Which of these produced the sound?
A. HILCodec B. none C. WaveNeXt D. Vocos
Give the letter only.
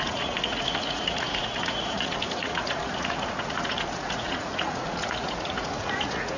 D